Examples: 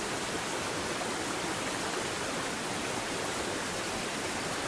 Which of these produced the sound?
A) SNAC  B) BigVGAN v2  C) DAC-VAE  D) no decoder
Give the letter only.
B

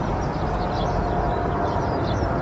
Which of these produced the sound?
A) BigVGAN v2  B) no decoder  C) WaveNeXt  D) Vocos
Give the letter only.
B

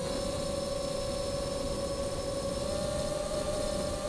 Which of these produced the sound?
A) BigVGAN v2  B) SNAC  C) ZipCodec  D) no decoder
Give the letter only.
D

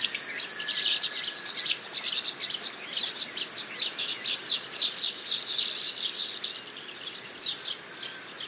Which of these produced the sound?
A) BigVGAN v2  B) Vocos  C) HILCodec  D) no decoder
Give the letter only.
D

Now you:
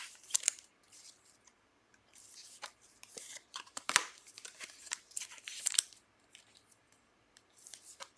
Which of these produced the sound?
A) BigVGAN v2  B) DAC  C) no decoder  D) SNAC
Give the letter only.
A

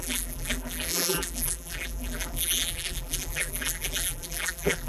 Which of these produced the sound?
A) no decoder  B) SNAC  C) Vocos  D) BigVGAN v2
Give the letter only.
D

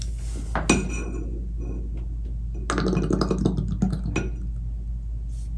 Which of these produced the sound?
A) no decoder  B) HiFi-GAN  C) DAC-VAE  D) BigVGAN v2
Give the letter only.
A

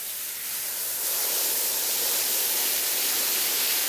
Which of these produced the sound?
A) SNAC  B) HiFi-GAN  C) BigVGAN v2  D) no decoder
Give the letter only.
C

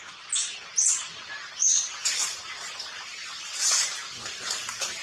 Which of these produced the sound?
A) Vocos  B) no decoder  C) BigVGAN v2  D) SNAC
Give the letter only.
B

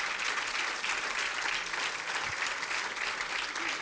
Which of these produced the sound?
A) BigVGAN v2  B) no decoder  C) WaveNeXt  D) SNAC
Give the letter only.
B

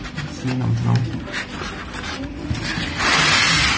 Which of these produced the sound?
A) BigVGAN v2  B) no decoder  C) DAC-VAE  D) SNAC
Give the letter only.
B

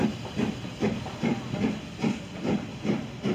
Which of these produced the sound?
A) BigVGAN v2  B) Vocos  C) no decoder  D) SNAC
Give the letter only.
C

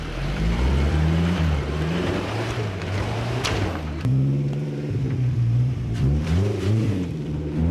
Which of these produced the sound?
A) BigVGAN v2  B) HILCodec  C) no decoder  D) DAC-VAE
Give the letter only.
A